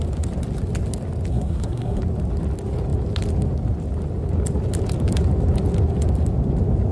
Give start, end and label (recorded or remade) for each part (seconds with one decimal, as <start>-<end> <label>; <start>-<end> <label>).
0.0-1.3 recorded; 1.3-2.0 remade; 2.0-6.9 recorded